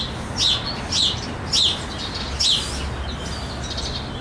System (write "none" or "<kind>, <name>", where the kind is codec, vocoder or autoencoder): none